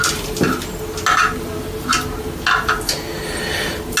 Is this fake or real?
real